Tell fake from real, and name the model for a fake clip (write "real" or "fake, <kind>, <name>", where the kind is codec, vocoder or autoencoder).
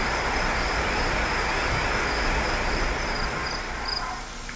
real